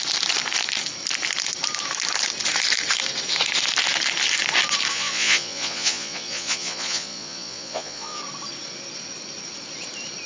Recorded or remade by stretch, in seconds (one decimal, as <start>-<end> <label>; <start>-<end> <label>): 0.0-4.9 recorded; 4.9-8.2 remade; 8.2-10.3 recorded